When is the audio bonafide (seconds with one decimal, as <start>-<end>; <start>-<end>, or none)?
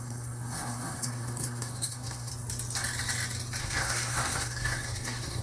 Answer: 2.3-3.6